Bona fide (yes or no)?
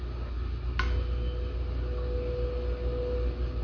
yes